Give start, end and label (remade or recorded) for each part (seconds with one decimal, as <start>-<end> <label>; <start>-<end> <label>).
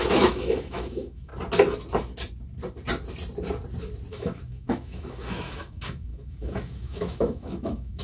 0.0-1.3 remade; 1.3-4.1 recorded; 4.1-8.0 remade